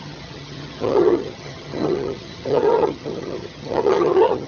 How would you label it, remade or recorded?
remade